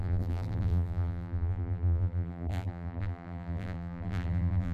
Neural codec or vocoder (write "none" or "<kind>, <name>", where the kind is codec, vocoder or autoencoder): vocoder, BigVGAN v2